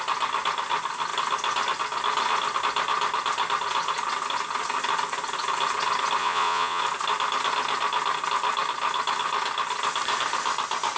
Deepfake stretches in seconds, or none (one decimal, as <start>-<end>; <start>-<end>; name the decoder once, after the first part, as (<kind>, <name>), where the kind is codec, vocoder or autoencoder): 6.2-6.8 (vocoder, Vocos)